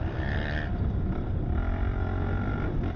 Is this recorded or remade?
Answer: recorded